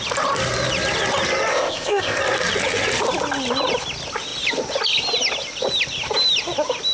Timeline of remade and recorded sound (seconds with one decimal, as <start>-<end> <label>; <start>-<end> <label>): 0.0-1.5 recorded; 1.5-2.2 remade; 2.2-6.9 recorded